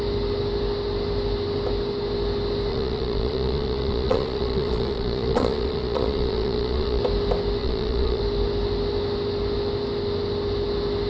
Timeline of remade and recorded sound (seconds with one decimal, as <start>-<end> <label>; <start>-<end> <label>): 0.0-2.7 recorded; 2.7-7.0 remade; 7.0-7.6 recorded; 7.6-8.2 remade; 8.2-11.1 recorded